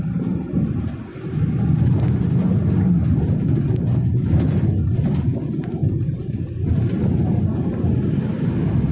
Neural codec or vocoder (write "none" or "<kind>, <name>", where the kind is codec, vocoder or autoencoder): none